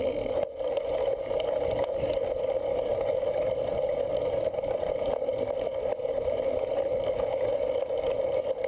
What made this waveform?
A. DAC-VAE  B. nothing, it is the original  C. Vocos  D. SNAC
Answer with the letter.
B